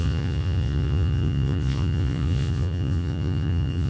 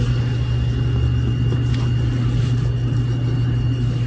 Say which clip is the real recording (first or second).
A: second